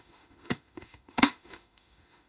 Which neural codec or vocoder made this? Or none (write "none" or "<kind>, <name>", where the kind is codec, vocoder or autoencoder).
autoencoder, DAC-VAE